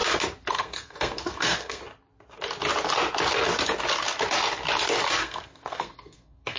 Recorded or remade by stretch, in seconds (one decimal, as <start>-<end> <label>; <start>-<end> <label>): 0.0-0.5 recorded; 0.5-1.8 remade; 1.8-5.2 recorded; 5.2-6.6 remade